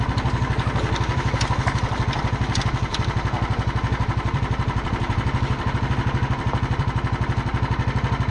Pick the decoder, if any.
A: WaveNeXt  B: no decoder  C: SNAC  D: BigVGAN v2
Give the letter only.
B